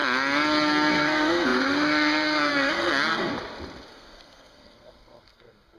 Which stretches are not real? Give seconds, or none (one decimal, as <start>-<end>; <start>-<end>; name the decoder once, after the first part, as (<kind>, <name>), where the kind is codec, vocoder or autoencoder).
0.9-3.3 (codec, SNAC); 3.9-5.8